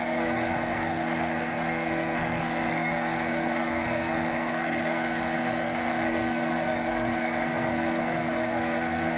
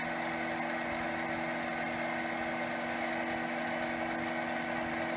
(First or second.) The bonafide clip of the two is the second